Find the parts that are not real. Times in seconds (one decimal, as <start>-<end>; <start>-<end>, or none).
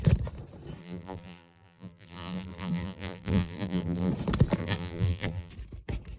0.8-4.1; 4.6-5.5